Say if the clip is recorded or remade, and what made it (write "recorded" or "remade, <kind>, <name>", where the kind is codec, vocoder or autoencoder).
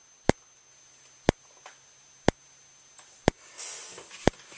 recorded